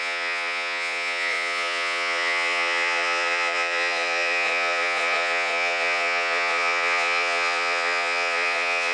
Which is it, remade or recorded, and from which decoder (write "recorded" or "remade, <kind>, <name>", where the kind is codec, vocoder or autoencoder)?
remade, vocoder, Vocos